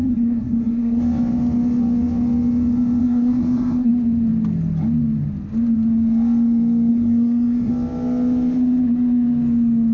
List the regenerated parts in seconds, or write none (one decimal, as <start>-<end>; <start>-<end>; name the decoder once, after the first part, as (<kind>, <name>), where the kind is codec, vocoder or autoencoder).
0.0-1.0 (codec, SNAC); 3.0-3.9; 6.9-7.7

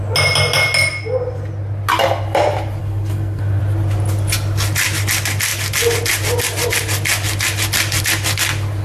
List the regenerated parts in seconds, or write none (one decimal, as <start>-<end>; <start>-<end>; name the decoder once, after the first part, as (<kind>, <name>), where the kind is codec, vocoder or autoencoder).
2.8-3.6 (codec, SNAC)

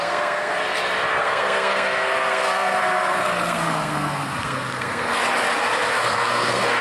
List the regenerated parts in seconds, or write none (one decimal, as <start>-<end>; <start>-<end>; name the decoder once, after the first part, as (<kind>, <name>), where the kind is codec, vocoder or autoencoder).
0.0-0.5 (codec, SNAC); 1.2-5.2; 5.9-6.8

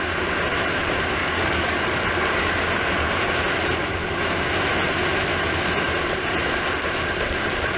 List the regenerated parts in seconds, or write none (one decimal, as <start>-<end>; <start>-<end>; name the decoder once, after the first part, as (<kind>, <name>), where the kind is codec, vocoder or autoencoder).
1.2-2.0 (codec, DAC)

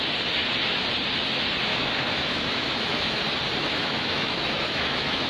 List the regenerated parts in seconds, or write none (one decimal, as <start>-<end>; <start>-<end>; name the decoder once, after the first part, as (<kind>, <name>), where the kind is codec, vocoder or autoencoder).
1.7-3.2 (autoencoder, DAC-VAE); 3.6-5.3

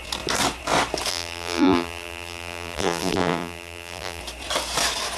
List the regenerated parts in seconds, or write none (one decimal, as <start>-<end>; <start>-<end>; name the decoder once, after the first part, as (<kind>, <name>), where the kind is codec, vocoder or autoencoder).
1.1-4.2 (vocoder, BigVGAN v2)